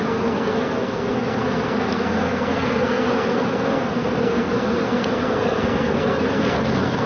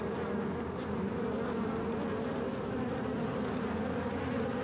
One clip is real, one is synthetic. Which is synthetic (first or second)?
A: first